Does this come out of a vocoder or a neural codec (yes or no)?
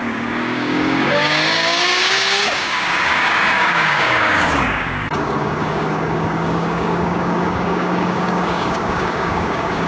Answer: yes